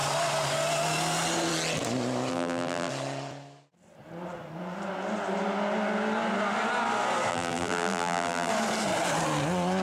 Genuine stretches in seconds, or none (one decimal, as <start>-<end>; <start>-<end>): 0.0-2.3; 2.9-7.3; 8.5-9.8